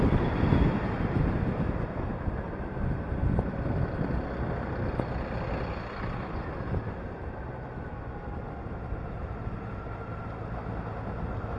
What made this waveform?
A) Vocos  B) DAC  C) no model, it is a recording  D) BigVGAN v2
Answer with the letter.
C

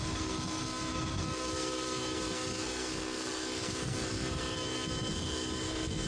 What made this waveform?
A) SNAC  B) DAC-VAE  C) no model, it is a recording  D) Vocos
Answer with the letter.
A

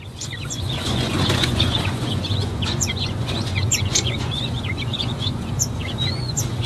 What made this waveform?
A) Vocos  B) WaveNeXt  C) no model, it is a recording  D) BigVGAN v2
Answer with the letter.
A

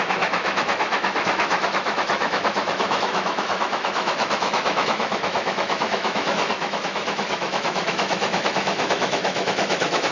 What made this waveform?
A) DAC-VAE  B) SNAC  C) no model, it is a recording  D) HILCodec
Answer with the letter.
A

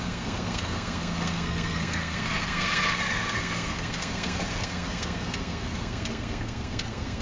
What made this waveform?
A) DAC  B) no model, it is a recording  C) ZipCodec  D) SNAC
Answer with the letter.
D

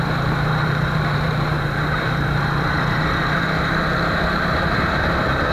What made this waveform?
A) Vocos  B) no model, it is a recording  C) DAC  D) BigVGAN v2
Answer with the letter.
D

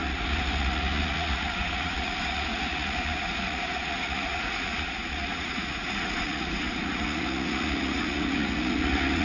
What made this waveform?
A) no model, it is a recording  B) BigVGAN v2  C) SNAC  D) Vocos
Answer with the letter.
D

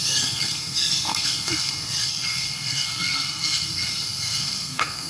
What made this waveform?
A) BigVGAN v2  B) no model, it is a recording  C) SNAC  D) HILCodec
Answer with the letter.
C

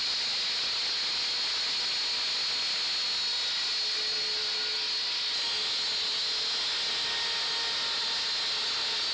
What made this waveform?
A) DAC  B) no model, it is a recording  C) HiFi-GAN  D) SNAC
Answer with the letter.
B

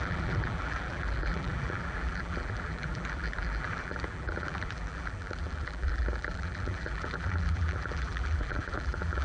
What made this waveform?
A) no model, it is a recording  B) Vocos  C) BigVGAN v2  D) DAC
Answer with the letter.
C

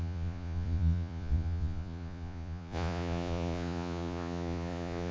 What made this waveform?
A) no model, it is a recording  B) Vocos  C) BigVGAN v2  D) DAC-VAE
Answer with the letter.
B